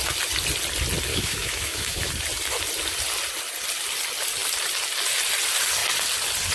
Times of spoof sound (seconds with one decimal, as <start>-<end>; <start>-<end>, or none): 1.1-2.1